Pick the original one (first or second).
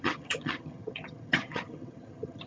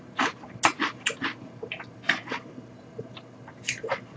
second